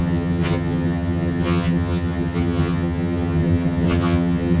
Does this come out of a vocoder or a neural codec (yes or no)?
yes